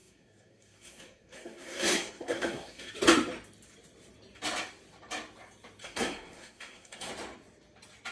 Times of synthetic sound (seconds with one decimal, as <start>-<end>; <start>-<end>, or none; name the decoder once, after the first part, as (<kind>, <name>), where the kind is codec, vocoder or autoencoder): 0.0-2.9 (codec, SNAC); 5.8-7.1